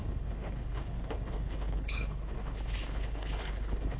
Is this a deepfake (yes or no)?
yes